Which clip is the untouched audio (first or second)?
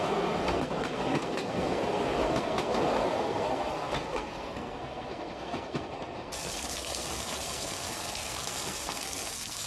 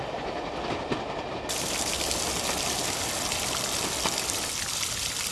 second